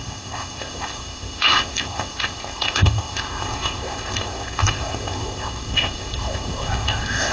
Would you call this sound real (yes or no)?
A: no